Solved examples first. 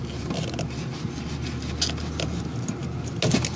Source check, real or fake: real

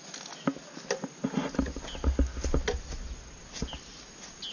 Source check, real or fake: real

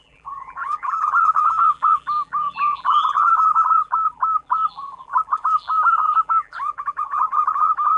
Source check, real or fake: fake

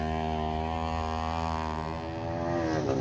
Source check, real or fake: real